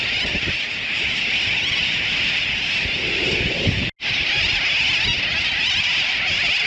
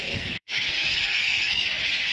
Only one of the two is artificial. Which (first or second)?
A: second